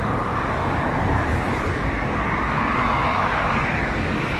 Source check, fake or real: fake